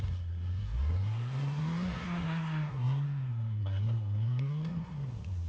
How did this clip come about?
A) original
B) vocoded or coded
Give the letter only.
B